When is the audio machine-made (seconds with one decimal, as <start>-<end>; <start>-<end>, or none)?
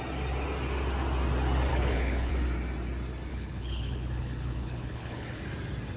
1.7-2.3; 3.3-5.4